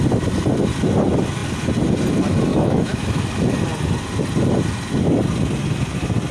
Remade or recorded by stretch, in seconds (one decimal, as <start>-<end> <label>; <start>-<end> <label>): 0.0-2.5 recorded; 2.5-3.2 remade; 3.2-6.3 recorded